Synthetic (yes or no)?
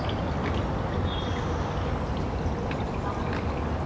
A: no